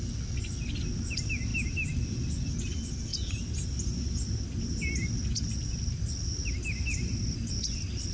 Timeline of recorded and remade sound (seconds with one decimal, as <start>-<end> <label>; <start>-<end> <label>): 0.0-8.1 recorded